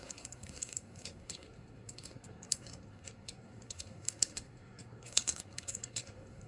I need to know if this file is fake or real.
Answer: fake